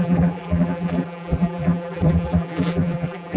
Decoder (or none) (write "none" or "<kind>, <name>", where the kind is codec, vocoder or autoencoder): vocoder, BigVGAN v2